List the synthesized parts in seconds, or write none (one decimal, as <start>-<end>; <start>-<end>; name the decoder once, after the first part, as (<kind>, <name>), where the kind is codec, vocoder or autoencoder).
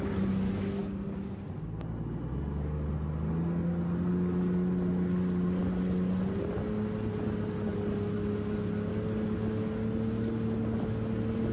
none